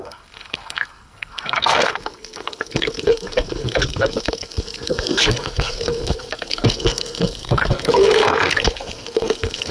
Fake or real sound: fake